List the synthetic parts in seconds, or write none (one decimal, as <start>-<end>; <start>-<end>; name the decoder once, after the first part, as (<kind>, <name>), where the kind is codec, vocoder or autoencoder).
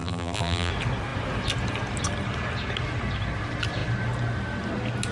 0.0-0.7 (vocoder, BigVGAN v2)